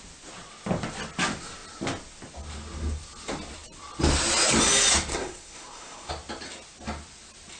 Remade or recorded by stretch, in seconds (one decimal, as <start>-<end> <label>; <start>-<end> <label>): 0.0-5.1 recorded; 5.1-6.1 remade; 6.1-7.6 recorded